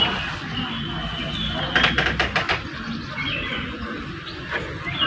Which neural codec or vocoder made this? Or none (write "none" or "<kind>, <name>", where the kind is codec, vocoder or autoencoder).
none